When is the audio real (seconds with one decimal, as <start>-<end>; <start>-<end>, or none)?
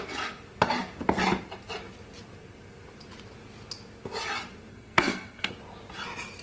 0.0-4.7; 5.5-6.4